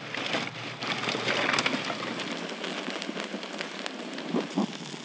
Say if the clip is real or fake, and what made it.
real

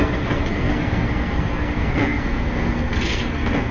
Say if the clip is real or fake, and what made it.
fake, codec, SNAC